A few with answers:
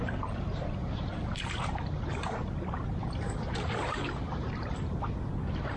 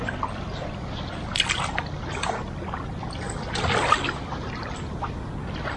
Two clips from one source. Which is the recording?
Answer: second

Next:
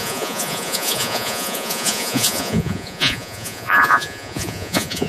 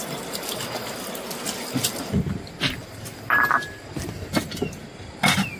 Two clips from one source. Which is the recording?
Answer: second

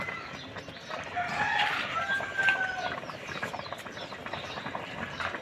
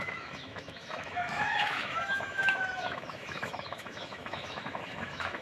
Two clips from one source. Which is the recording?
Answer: first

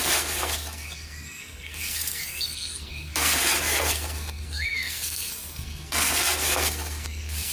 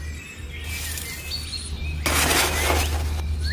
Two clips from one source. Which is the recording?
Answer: second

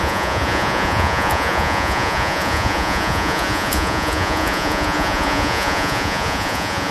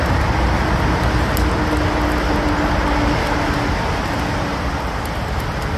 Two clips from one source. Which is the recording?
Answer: second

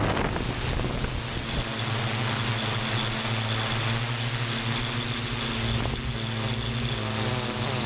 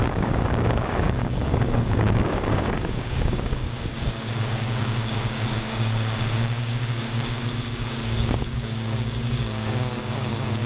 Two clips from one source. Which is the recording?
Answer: first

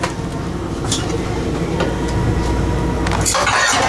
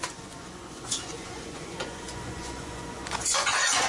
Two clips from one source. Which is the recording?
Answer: first